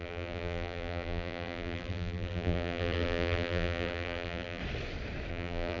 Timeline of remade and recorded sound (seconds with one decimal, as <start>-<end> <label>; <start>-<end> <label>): 0.0-4.6 remade; 4.6-5.3 recorded; 5.3-5.8 remade